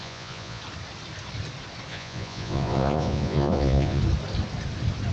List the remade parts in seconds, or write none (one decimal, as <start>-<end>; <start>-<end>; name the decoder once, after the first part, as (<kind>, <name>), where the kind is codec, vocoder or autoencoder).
0.0-0.6 (vocoder, Vocos); 1.9-4.0